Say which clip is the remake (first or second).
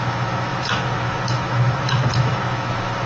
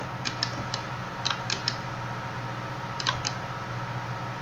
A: first